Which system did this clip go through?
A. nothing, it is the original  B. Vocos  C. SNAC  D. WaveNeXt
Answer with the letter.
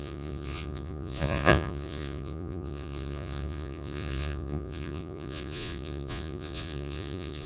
B